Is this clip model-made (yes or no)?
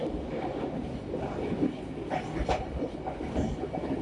no